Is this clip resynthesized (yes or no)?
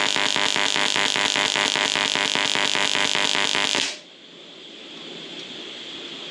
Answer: no